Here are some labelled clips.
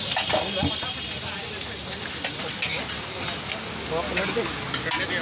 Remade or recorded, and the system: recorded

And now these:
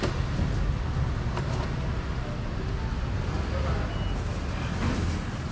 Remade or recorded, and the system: recorded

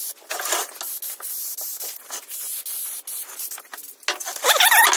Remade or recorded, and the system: recorded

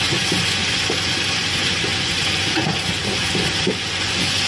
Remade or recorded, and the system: remade, vocoder, Vocos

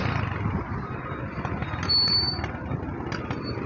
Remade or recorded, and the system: recorded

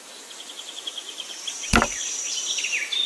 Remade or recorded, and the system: recorded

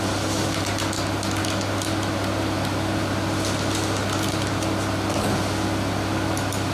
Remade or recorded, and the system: recorded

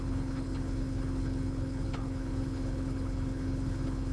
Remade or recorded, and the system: remade, codec, HILCodec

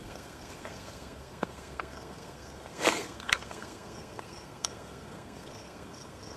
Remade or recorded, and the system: remade, codec, SNAC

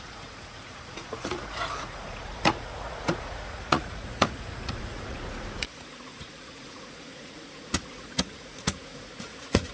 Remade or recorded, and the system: remade, vocoder, Vocos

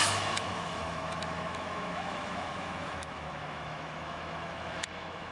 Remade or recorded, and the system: remade, autoencoder, DAC-VAE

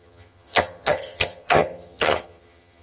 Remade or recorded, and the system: remade, vocoder, HiFi-GAN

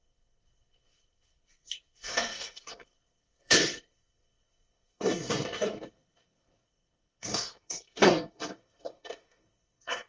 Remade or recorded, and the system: remade, codec, SNAC